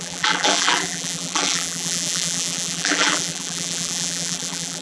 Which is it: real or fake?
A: fake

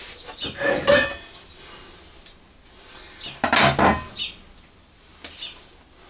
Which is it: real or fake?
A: real